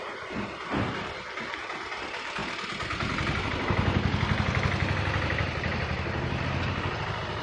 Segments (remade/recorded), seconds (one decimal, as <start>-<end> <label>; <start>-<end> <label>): 0.0-7.4 recorded